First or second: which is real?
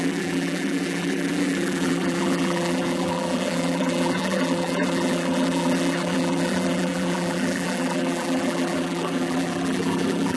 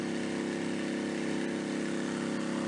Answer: second